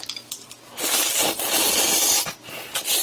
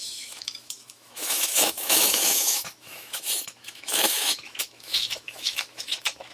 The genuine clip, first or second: first